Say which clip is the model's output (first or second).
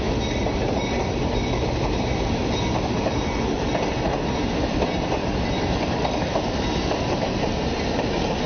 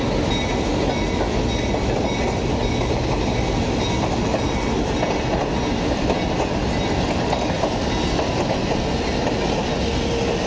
first